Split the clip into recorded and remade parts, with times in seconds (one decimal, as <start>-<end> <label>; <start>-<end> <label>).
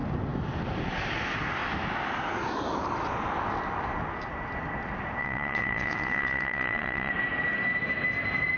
0.0-5.2 recorded; 5.2-7.1 remade; 7.1-8.6 recorded